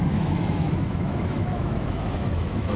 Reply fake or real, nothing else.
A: fake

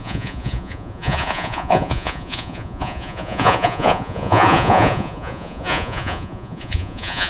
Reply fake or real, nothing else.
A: fake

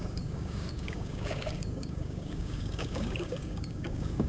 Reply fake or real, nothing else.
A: fake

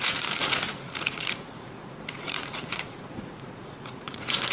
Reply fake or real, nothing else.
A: fake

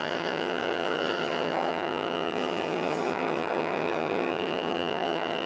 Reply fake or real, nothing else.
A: fake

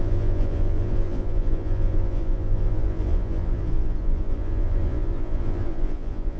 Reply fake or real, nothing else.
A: fake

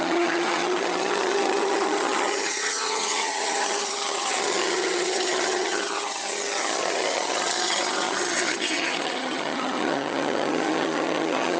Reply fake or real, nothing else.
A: fake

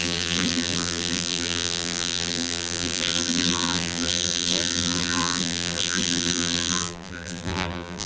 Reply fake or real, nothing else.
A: fake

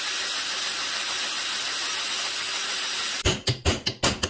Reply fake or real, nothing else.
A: real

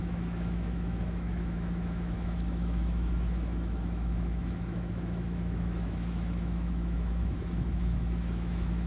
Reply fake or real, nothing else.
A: fake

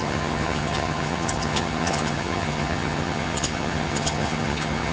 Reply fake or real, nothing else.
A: fake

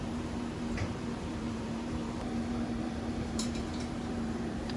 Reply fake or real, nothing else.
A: fake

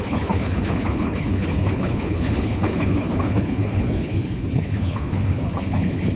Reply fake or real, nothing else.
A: fake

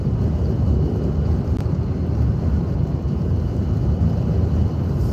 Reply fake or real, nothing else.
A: real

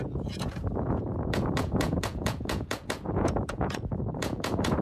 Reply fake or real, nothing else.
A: fake